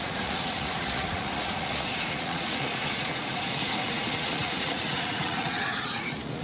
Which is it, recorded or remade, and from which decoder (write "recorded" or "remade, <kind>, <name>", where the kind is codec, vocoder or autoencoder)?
remade, vocoder, Vocos